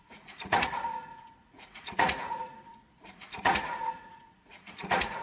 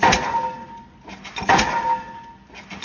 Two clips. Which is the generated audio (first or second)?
first